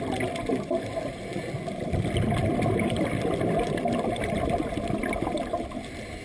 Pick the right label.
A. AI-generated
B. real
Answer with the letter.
A